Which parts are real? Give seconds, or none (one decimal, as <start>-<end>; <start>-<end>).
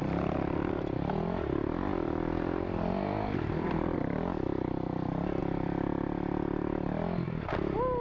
0.0-1.9; 5.4-8.0